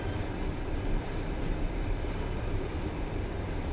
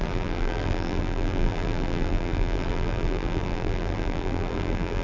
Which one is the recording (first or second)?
first